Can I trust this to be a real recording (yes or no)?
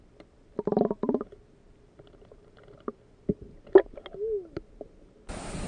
yes